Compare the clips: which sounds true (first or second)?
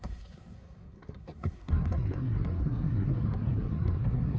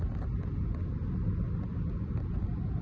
second